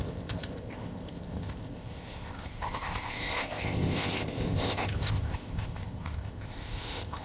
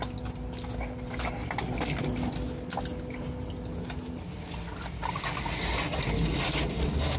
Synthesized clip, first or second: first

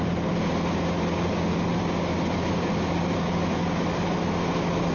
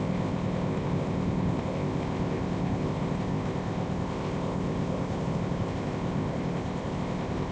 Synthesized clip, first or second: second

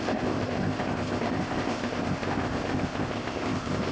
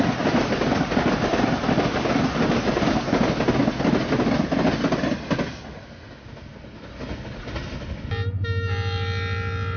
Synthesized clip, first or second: first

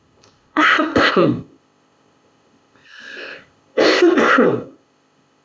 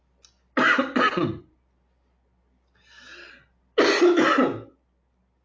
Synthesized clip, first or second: first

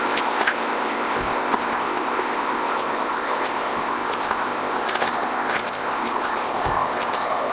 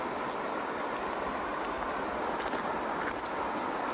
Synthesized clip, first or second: first